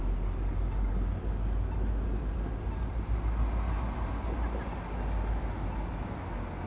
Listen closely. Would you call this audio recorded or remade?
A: recorded